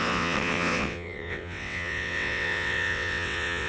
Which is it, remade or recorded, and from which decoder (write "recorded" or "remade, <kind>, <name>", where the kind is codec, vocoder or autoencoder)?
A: remade, vocoder, WaveNeXt